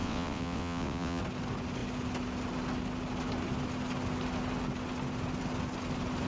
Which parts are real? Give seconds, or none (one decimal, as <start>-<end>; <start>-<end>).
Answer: 1.2-6.3